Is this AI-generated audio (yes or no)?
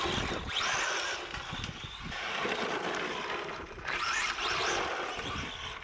no